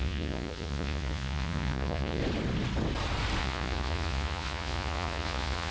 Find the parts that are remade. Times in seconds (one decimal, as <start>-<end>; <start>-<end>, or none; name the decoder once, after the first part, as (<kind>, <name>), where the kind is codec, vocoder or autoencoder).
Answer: 0.0-2.2 (vocoder, Vocos); 3.4-5.7

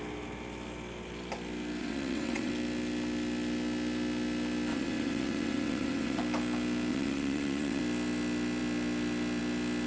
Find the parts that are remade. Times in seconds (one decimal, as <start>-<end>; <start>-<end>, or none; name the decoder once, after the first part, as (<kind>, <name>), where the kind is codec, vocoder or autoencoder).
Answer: 1.8-2.5 (vocoder, WaveNeXt); 4.7-6.2; 6.9-7.8

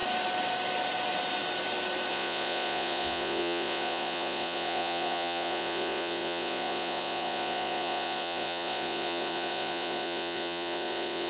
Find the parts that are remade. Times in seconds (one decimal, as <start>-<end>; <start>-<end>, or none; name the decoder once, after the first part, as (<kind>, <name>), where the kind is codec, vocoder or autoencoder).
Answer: 2.1-11.3 (vocoder, Vocos)